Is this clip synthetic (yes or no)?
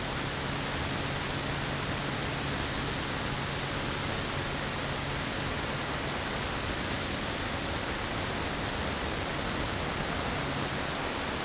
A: no